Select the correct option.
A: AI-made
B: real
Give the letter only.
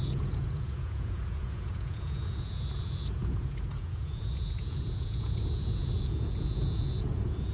A